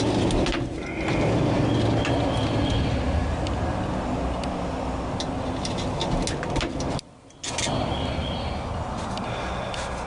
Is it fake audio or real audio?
real